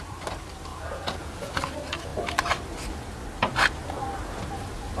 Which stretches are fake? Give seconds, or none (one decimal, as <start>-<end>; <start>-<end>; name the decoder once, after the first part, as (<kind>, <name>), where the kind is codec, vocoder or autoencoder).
0.7-1.6 (vocoder, Vocos)